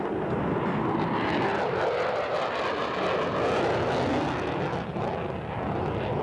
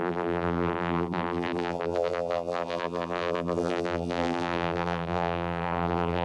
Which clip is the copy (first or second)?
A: second